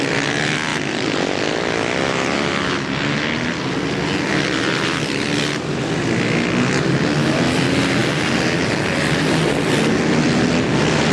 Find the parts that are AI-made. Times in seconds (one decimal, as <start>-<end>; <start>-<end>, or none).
none